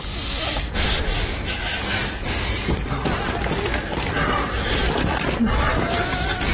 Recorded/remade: recorded